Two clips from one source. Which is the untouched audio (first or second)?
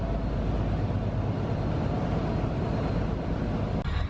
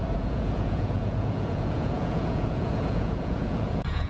first